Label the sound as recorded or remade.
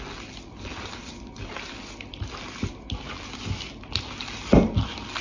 recorded